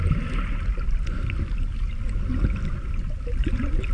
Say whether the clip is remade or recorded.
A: recorded